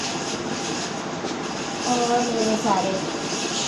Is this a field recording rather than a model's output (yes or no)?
yes